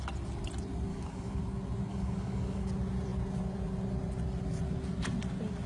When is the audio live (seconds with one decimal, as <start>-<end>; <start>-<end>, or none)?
0.0-0.9; 1.4-1.9; 2.7-5.7